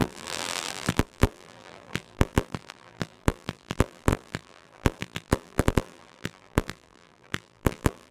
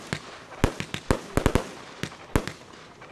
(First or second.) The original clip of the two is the second